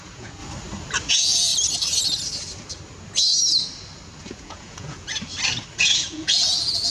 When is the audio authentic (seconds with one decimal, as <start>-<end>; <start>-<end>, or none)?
0.4-1.1; 1.5-4.3; 5.1-5.7